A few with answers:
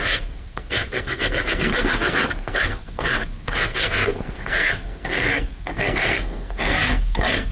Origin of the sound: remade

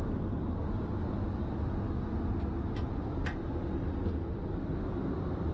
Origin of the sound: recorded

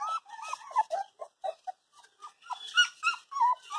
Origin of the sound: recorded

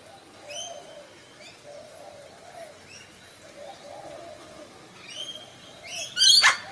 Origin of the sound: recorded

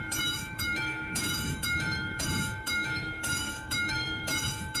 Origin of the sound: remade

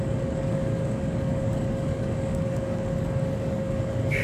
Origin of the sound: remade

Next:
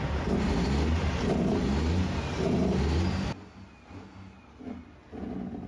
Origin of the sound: recorded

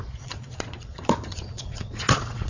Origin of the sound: remade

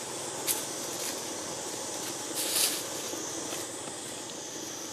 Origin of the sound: recorded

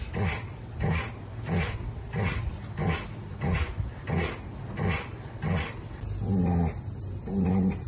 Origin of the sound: recorded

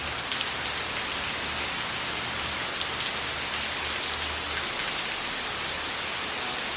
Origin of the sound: recorded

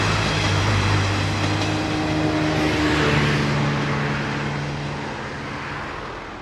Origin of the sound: recorded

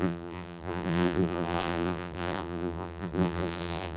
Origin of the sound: remade